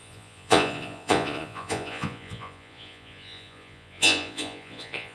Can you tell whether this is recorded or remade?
remade